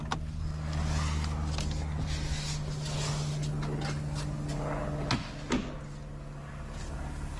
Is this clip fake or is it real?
real